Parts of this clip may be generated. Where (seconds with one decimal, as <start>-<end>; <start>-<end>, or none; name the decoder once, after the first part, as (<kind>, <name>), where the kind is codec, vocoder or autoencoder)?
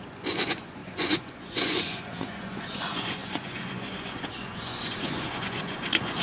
0.0-6.2 (vocoder, Vocos)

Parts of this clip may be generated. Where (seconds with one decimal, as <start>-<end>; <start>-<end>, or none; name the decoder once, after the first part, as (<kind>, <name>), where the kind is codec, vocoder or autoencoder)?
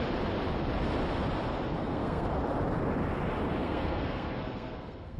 1.8-2.3 (codec, SNAC); 3.6-5.2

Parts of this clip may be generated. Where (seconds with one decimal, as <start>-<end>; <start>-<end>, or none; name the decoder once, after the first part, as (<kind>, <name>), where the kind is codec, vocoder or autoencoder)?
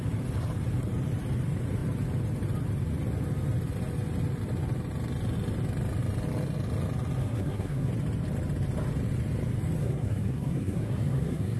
7.2-7.9 (codec, SNAC); 9.8-11.6